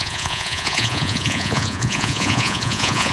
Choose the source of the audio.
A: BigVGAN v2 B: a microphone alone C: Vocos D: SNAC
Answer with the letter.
C